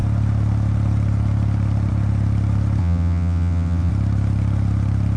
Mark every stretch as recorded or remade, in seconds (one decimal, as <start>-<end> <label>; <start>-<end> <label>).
0.0-2.8 recorded; 2.8-3.9 remade; 3.9-5.2 recorded